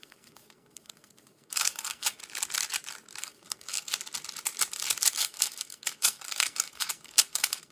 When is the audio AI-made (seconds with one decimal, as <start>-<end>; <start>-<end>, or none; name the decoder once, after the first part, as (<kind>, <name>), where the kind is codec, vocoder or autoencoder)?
0.0-2.2 (codec, SNAC); 3.2-3.9; 5.1-7.7